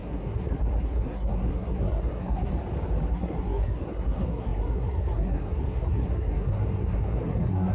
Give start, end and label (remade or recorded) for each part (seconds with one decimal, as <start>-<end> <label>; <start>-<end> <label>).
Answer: 0.0-2.5 remade; 2.5-3.1 recorded; 3.1-7.7 remade